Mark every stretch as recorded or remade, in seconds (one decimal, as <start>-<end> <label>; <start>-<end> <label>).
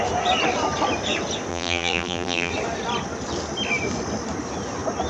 0.0-1.5 recorded; 1.5-2.5 remade; 2.5-5.1 recorded